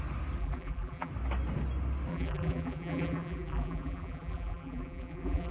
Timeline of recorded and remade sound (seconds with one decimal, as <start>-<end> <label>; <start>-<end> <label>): 0.0-0.4 recorded; 0.4-1.1 remade; 1.1-2.1 recorded; 2.1-5.5 remade